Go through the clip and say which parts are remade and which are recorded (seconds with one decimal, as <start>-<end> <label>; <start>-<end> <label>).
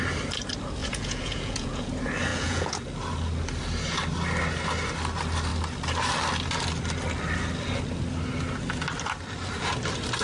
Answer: 0.0-0.8 recorded; 0.8-1.9 remade; 1.9-2.3 recorded; 2.3-2.8 remade; 2.8-10.2 recorded